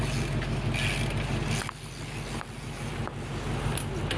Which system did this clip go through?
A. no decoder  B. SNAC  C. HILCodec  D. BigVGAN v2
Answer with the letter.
A